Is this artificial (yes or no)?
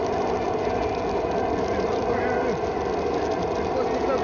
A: no